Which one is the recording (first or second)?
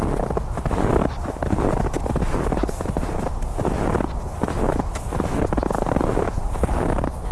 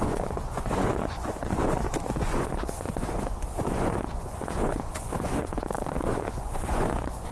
first